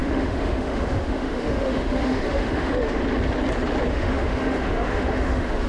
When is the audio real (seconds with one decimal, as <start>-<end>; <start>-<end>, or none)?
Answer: 3.0-3.9